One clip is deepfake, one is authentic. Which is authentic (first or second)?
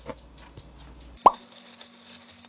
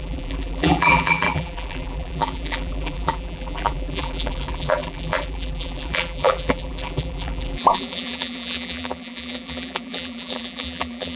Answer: first